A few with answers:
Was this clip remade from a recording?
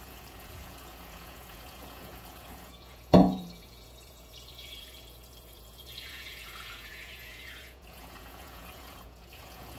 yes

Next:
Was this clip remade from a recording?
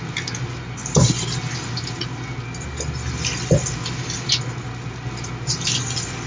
no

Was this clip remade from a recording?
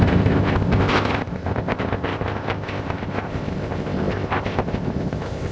yes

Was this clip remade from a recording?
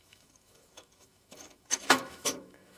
yes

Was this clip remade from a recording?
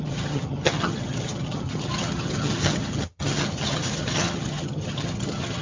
yes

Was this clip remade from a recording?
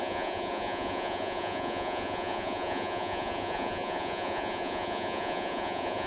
yes